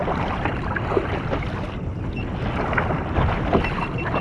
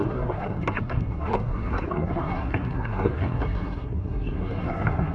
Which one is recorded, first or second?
first